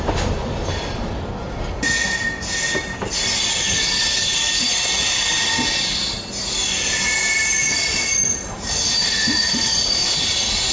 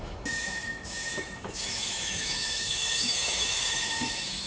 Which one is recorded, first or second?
first